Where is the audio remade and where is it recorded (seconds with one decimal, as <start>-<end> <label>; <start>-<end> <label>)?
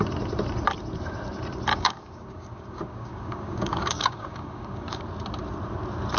0.0-1.7 recorded; 1.7-5.0 remade; 5.0-6.2 recorded